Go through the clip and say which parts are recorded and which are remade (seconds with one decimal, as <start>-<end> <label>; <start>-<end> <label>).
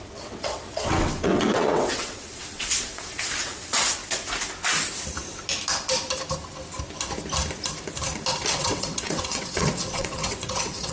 0.0-4.0 remade; 4.0-8.5 recorded; 8.5-10.9 remade